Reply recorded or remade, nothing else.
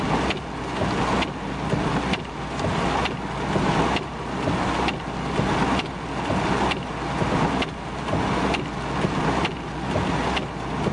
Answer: recorded